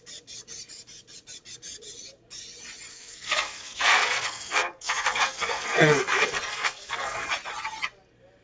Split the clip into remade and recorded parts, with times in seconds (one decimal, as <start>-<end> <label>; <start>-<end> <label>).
0.0-2.9 recorded; 2.9-7.3 remade; 7.3-8.4 recorded